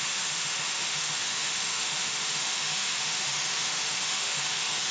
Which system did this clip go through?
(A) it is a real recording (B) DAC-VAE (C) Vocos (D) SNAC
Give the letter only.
B